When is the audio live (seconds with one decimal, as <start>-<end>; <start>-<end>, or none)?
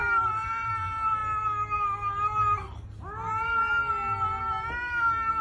0.7-5.4